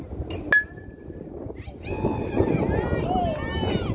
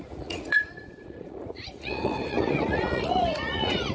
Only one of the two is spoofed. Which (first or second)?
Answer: second